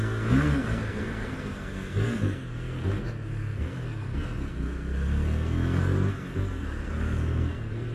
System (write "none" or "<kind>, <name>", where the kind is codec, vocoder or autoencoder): codec, SNAC